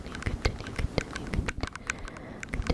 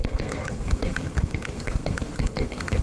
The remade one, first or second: second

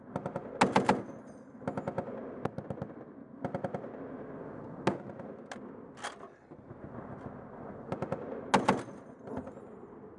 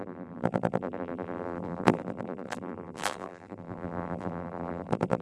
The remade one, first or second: second